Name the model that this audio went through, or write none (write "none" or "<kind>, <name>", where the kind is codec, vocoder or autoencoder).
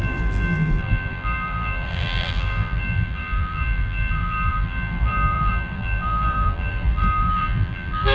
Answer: vocoder, BigVGAN v2